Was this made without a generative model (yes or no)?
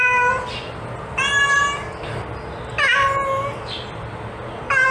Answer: yes